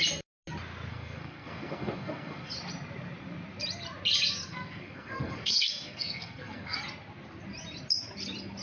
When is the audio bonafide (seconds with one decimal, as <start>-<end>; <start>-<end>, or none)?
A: 0.0-0.9; 2.5-4.5; 6.8-8.6